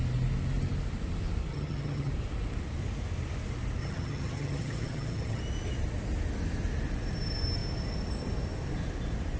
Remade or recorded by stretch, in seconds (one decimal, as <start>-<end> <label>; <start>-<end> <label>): 0.0-1.5 recorded; 1.5-2.1 remade; 2.1-3.8 recorded; 3.8-5.4 remade; 5.4-9.4 recorded